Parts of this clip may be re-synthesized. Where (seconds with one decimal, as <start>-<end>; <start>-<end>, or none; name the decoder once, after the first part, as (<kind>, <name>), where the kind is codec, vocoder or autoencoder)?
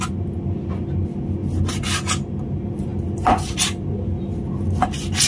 none